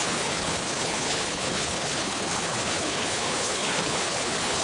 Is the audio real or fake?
fake